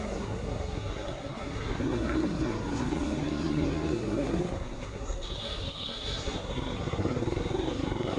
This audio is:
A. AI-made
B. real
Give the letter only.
A